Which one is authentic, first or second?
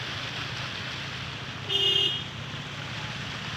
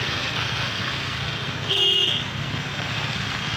first